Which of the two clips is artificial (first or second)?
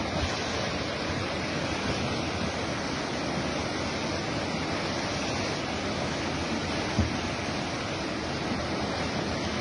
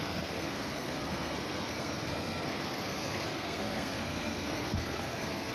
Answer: second